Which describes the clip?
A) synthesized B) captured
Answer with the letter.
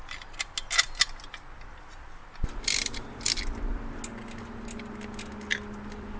B